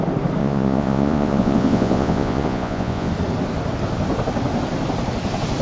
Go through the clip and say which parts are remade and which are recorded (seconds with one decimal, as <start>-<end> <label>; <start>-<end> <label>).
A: 0.0-0.4 recorded; 0.4-3.1 remade; 3.1-5.6 recorded